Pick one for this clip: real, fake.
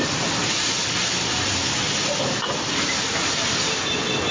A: real